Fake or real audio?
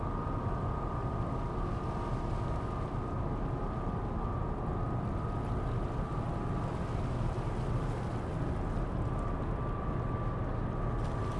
real